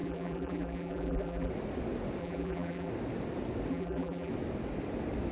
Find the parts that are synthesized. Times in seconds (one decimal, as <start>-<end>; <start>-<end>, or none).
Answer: 0.0-1.5; 2.2-2.9; 3.7-4.3